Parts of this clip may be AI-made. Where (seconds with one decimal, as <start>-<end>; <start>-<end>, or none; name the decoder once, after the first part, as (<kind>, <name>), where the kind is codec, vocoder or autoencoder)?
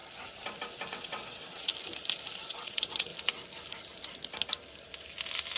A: 0.9-1.7 (vocoder, WaveNeXt); 2.4-3.1